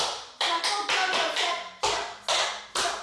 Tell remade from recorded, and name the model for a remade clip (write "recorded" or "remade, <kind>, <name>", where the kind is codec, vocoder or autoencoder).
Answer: recorded